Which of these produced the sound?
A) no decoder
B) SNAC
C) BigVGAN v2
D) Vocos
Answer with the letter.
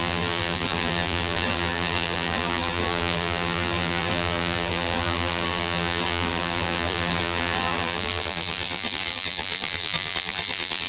C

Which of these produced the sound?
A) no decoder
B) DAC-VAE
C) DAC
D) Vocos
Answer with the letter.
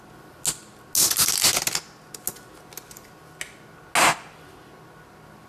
A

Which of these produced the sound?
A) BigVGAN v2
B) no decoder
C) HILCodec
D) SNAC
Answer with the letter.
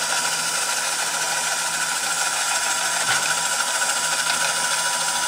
B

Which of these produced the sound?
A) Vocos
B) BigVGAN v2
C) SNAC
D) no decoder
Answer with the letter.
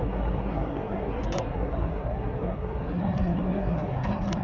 C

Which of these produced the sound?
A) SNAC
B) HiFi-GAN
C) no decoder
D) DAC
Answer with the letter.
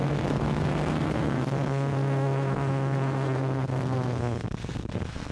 A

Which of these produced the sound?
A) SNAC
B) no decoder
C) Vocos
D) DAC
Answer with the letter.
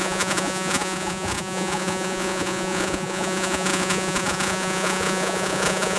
C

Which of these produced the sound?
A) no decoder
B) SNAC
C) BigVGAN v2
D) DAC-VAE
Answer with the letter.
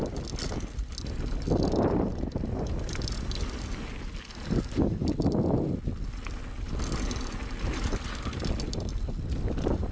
A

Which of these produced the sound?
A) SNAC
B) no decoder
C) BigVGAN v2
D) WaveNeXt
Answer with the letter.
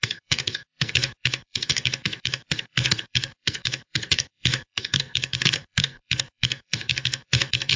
A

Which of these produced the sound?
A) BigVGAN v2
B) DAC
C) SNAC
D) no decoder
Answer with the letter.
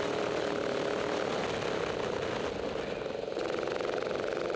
D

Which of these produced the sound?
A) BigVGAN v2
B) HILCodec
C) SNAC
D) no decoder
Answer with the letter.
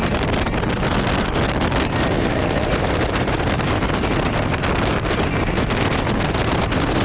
D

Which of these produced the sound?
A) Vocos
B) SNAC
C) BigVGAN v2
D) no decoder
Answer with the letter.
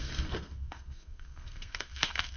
B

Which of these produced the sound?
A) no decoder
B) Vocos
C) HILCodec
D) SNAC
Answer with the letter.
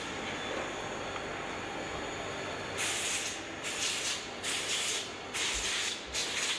A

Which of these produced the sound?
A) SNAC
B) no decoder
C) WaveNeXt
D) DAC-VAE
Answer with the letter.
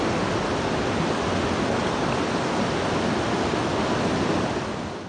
B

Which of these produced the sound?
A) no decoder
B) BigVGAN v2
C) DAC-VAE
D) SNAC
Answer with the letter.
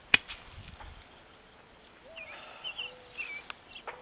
A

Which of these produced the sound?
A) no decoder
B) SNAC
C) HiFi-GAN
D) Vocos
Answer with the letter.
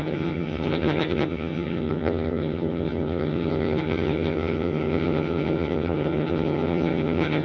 C